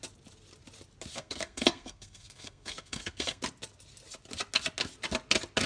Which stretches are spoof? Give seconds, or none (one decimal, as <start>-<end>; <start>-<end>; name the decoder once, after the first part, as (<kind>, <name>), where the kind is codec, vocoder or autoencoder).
1.1-3.4 (codec, SNAC)